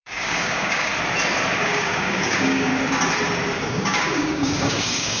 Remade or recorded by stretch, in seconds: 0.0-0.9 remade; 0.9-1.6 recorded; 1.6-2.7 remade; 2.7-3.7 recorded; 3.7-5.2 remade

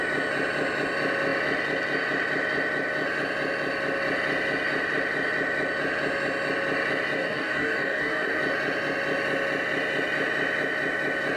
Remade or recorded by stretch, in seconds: 0.0-7.2 recorded; 7.2-8.4 remade; 8.4-11.4 recorded